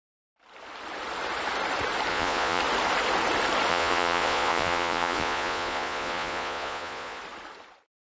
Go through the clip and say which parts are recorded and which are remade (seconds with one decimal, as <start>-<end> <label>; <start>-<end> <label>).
0.0-2.1 recorded; 2.1-2.6 remade; 2.6-3.7 recorded; 3.7-7.2 remade; 7.2-8.2 recorded